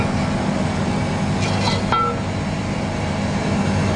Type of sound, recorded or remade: recorded